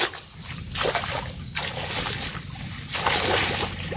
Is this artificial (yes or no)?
no